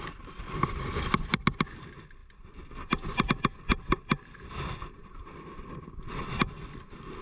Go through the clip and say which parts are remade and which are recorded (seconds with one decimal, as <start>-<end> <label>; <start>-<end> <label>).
0.0-7.2 recorded

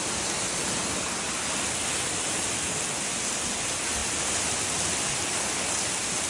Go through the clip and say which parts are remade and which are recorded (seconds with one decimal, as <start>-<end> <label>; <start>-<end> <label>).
0.0-6.3 recorded

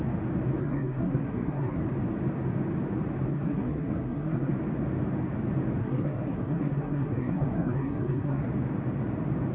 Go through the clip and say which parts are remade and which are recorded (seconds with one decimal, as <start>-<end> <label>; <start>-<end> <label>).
0.0-0.6 recorded; 0.6-1.8 remade; 1.8-3.3 recorded; 3.3-4.5 remade; 4.5-5.8 recorded; 5.8-8.5 remade; 8.5-9.5 recorded